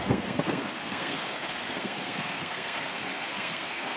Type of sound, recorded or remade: remade